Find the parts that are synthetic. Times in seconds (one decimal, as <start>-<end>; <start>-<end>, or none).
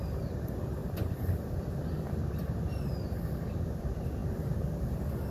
none